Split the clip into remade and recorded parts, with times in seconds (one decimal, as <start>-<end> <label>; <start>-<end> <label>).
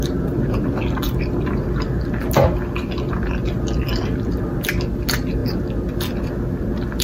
0.0-7.0 recorded